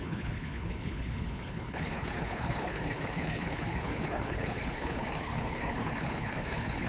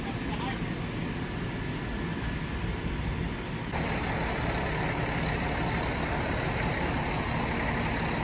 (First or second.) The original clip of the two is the second